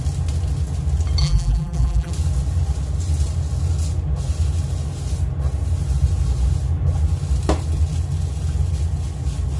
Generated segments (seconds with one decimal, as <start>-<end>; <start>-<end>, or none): 1.2-2.1